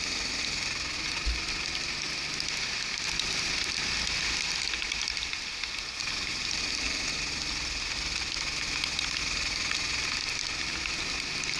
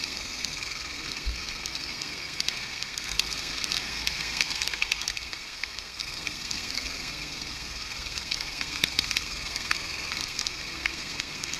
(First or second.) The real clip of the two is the first